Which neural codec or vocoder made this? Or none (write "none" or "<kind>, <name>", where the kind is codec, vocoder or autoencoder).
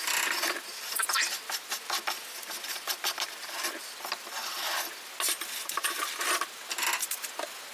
vocoder, BigVGAN v2